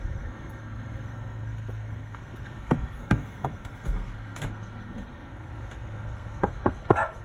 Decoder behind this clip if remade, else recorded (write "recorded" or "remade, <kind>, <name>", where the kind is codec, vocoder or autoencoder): remade, codec, SNAC